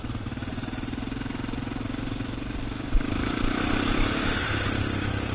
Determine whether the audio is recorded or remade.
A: recorded